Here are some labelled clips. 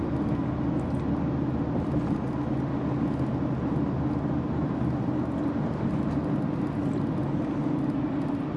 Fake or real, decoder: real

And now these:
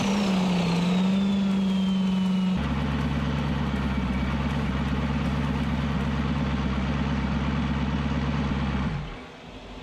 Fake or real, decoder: real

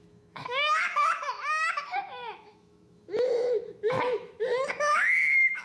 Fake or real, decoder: fake, autoencoder, DAC-VAE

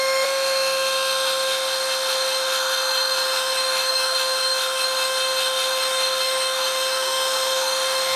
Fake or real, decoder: fake, autoencoder, DAC-VAE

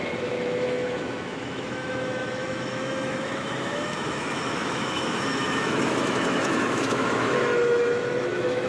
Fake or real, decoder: fake, autoencoder, DAC-VAE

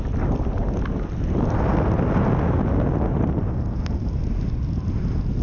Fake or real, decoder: real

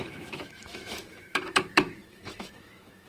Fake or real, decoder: fake, autoencoder, DAC-VAE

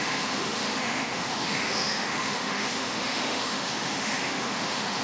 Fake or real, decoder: fake, autoencoder, DAC-VAE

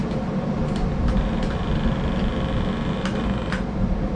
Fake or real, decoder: real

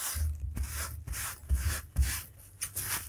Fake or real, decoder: real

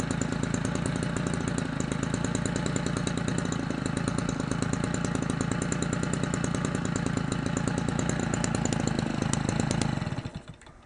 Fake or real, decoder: real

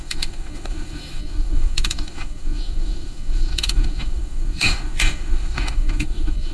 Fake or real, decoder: fake, autoencoder, DAC-VAE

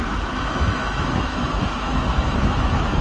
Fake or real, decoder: fake, autoencoder, DAC-VAE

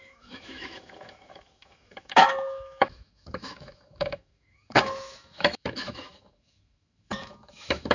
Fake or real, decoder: fake, autoencoder, DAC-VAE